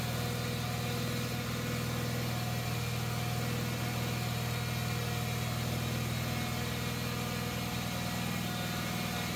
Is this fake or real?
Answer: real